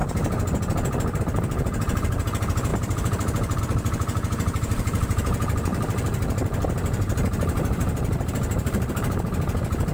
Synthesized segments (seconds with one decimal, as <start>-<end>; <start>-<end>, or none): 1.2-9.9